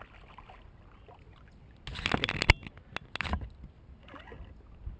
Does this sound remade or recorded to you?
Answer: recorded